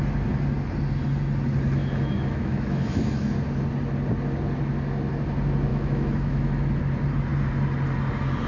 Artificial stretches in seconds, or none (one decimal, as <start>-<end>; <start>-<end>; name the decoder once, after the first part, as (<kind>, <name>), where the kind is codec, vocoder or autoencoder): 1.8-3.3 (autoencoder, DAC-VAE); 5.7-6.8